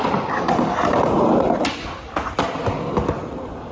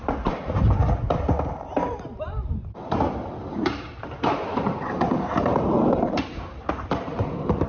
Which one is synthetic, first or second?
second